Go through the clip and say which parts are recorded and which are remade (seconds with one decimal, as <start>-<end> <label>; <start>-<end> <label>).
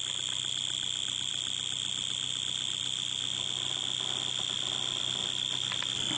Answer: 0.0-6.2 recorded